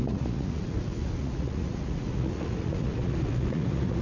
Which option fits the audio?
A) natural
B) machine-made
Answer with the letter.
B